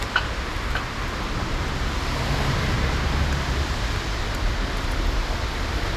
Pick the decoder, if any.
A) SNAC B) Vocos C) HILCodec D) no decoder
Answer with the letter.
D